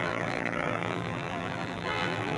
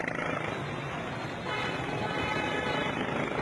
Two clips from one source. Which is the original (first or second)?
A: second